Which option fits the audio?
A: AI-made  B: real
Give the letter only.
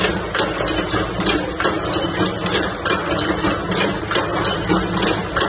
B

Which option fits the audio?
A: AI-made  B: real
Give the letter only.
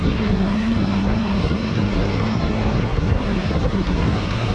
A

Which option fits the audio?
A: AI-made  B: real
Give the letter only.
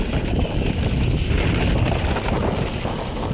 B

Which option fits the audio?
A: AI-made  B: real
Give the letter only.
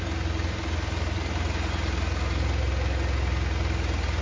B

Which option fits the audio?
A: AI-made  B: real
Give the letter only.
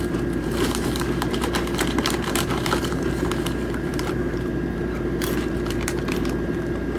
A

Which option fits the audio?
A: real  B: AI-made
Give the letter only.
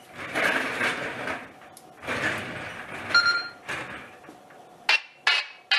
A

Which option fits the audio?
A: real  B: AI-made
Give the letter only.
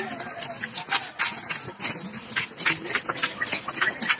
A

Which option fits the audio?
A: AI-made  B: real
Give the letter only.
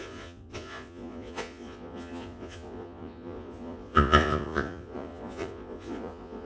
A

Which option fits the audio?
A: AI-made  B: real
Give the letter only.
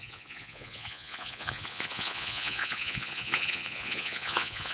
A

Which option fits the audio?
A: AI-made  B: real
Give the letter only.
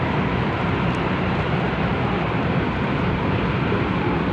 A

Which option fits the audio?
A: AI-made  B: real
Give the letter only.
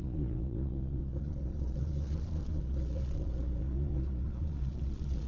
A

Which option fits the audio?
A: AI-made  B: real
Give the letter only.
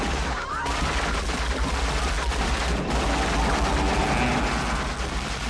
B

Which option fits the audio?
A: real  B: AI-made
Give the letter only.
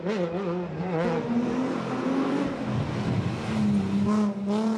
A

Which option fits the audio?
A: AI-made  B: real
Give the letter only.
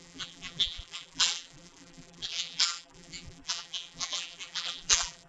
A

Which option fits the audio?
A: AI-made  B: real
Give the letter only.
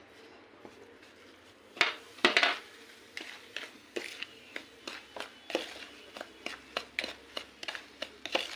B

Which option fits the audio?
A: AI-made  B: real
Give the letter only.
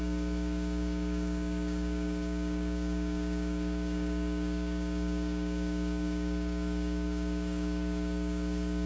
A